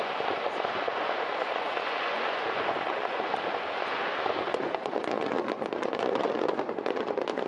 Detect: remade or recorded remade